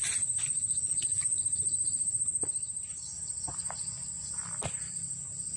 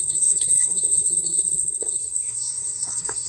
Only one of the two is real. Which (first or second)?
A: first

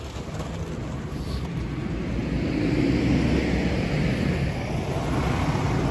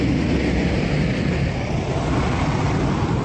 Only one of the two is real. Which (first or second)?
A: first